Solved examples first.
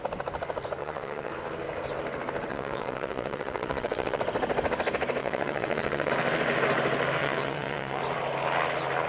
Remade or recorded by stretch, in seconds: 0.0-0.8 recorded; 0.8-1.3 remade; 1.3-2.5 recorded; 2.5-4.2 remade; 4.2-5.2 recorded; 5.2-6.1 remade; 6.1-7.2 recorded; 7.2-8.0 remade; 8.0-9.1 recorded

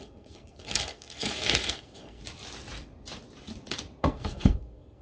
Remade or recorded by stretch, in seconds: 0.0-2.2 remade; 2.2-4.0 recorded; 4.0-5.0 remade

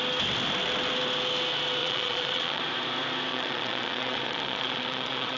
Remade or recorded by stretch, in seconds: 0.0-1.8 recorded; 1.8-2.6 remade; 2.6-3.3 recorded; 3.3-5.4 remade

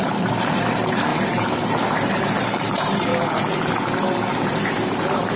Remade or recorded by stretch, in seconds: 0.0-3.1 remade; 3.1-4.5 recorded; 4.5-5.4 remade